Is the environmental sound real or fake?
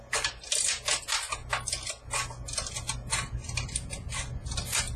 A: real